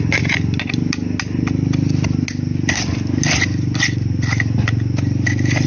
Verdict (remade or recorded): recorded